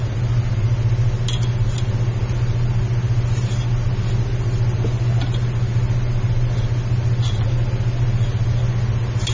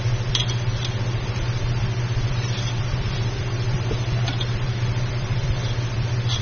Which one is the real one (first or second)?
first